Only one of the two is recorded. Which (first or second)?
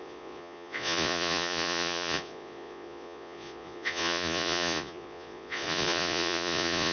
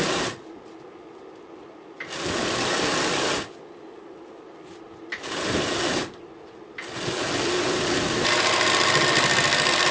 second